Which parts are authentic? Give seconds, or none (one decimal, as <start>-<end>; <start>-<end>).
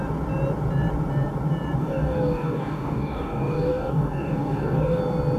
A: 0.0-1.8; 5.0-5.4